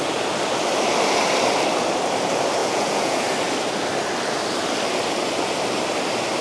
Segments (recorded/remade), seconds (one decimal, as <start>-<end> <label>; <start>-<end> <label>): 0.0-2.6 recorded; 2.6-3.2 remade; 3.2-6.4 recorded